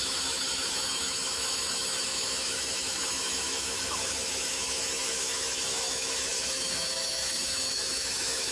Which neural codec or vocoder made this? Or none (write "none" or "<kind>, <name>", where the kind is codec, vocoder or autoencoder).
autoencoder, DAC-VAE